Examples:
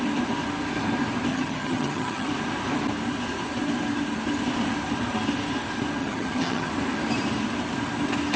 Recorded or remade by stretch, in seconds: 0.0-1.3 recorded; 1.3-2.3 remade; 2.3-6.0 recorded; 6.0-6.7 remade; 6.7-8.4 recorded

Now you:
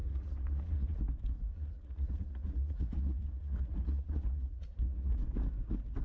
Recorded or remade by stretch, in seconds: 0.0-1.0 remade; 1.0-1.5 recorded; 1.5-5.1 remade; 5.1-6.0 recorded

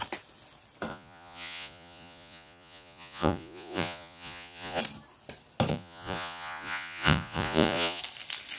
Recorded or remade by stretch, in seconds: 0.0-0.9 recorded; 0.9-4.8 remade; 4.8-5.7 recorded; 5.7-8.0 remade; 8.0-8.6 recorded

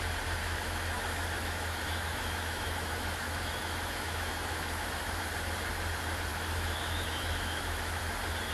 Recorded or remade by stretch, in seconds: 0.0-0.4 recorded; 0.4-5.2 remade; 5.2-6.3 recorded; 6.3-8.0 remade; 8.0-8.5 recorded

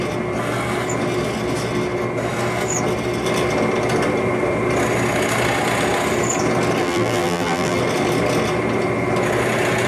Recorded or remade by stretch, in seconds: 0.0-6.8 recorded; 6.8-7.8 remade; 7.8-9.9 recorded

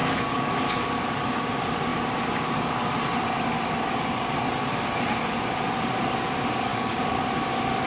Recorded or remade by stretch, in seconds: 0.0-1.3 remade; 1.3-6.7 recorded; 6.7-7.2 remade; 7.2-7.9 recorded